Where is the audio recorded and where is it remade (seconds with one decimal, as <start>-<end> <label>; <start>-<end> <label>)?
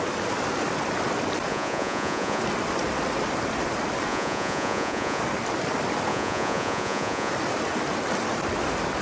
0.0-1.5 recorded; 1.5-2.4 remade; 2.4-4.1 recorded; 4.1-5.2 remade; 5.2-6.1 recorded; 6.1-7.3 remade; 7.3-9.0 recorded